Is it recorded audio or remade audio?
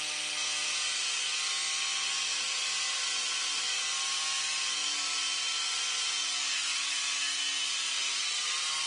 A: recorded